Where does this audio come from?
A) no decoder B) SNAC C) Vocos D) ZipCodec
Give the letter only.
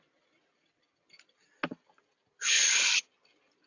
A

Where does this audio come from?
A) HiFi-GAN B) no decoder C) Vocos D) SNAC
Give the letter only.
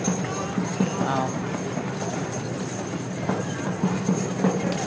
B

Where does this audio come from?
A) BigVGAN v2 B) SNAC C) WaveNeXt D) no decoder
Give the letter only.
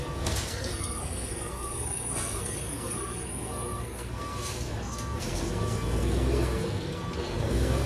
B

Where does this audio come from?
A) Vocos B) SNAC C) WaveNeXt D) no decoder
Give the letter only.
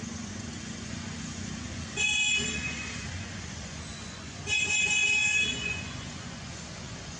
A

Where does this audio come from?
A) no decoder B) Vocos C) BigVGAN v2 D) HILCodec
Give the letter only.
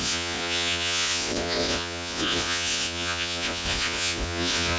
B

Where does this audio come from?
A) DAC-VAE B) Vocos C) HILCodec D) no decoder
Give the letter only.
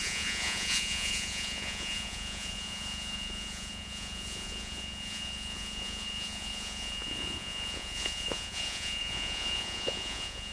B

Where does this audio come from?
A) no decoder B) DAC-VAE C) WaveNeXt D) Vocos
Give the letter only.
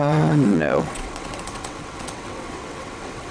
C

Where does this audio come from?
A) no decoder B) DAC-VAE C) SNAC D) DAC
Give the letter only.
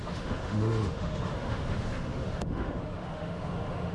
B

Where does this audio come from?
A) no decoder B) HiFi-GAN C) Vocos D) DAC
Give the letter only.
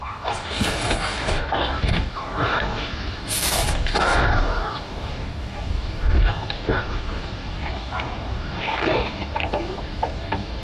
D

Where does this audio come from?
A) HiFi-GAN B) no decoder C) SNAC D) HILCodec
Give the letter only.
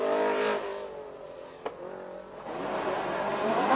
B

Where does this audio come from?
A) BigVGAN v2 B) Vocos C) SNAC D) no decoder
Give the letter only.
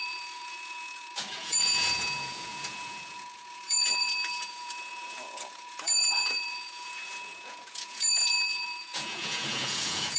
B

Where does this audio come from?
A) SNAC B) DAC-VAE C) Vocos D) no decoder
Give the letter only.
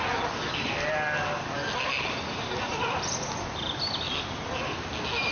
D